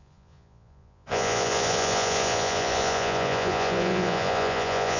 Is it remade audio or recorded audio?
remade